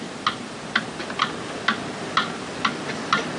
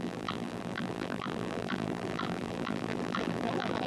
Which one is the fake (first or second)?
second